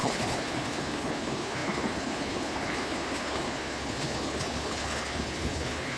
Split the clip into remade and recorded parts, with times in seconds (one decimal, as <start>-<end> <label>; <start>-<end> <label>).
0.0-6.0 remade